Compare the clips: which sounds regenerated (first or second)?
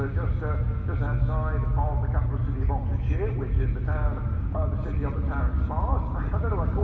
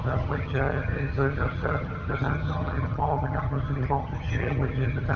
second